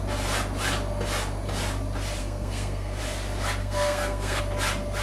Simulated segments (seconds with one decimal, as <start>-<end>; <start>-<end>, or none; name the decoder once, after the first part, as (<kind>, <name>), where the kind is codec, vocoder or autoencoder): 2.2-3.0 (codec, SNAC); 3.6-4.4

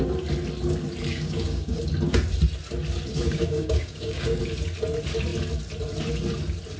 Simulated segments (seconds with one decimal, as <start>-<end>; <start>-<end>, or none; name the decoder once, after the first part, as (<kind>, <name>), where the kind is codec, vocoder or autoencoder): 1.1-1.8 (codec, DAC); 3.1-4.4

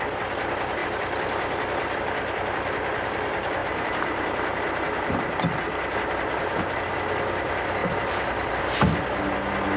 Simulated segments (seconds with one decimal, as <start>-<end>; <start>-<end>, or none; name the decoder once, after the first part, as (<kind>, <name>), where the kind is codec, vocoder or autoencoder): 3.6-5.1 (vocoder, BigVGAN v2)